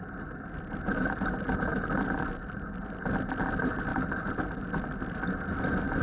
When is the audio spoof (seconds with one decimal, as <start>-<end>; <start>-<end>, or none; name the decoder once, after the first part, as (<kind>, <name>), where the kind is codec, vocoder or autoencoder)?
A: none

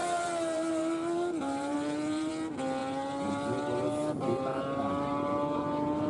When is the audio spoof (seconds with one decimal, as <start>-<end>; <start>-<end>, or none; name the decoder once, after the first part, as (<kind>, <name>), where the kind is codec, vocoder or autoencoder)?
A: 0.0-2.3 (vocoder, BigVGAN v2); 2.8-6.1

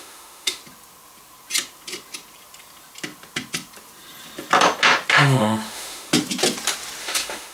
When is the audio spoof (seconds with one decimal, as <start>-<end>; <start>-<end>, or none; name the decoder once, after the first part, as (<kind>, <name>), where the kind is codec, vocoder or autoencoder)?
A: 0.0-0.6 (autoencoder, DAC-VAE); 5.1-6.1; 7.0-7.5

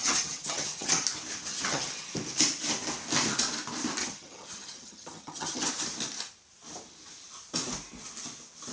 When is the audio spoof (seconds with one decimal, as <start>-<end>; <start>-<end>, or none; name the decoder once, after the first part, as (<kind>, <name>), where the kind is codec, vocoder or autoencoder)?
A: 0.0-0.9 (vocoder, HiFi-GAN); 1.5-2.1; 4.0-5.7

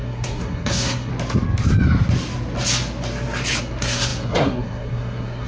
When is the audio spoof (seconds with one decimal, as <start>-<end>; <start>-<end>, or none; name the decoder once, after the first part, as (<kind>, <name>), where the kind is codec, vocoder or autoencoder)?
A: 0.0-1.1 (codec, SNAC); 3.6-5.5

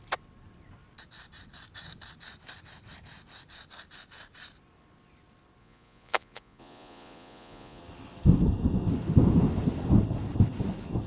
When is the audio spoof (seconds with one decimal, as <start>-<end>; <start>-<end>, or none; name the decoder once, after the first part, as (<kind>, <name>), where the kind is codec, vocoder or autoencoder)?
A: 5.6-7.8 (vocoder, Vocos)

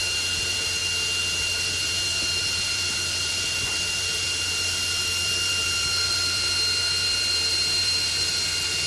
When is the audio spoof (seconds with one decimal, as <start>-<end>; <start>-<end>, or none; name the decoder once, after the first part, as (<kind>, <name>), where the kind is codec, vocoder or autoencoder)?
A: 0.0-0.8 (vocoder, BigVGAN v2); 1.3-8.9